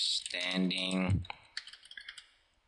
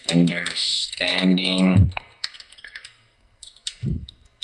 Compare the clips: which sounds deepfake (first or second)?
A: second